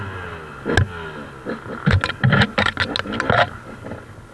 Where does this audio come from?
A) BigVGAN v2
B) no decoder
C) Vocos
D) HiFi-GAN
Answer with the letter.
B